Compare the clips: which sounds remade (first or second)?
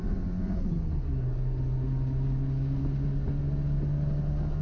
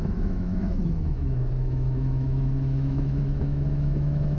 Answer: second